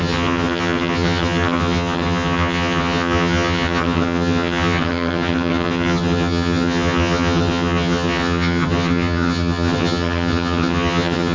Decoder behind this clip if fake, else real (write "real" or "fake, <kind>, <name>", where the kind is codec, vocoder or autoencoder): fake, vocoder, HiFi-GAN